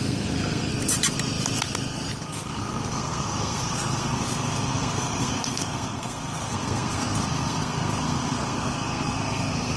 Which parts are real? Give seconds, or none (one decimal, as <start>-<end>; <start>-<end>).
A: 0.7-2.3

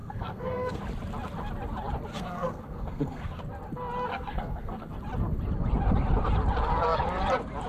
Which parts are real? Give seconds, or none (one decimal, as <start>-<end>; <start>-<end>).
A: 0.8-2.1; 3.4-4.1; 4.9-7.7

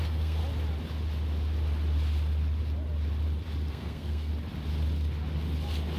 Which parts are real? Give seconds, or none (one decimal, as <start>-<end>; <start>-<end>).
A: 0.4-3.7; 4.3-6.0

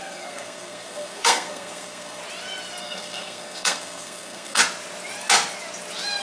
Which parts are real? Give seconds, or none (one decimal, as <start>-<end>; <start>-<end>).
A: 2.2-2.8; 4.6-6.2

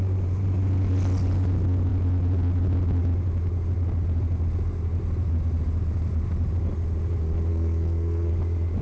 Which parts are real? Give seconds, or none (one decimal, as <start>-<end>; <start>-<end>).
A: 0.0-7.5; 8.3-8.8

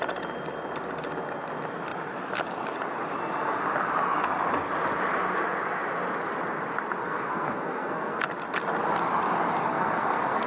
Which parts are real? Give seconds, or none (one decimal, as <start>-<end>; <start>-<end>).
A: 0.0-7.0; 8.2-9.7

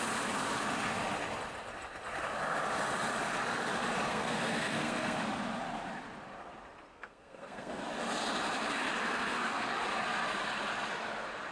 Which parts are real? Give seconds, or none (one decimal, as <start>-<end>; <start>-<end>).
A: 0.0-4.1; 5.2-6.9; 7.8-9.0; 9.7-11.5